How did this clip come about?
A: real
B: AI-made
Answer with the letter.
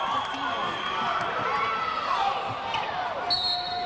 A